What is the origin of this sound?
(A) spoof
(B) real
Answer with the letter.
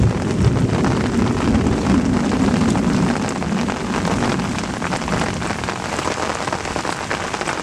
B